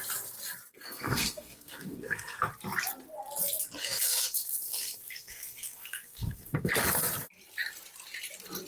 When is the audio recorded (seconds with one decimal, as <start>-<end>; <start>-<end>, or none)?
0.0-0.7; 2.4-3.8; 6.7-8.7